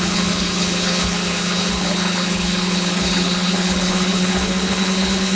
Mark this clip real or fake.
fake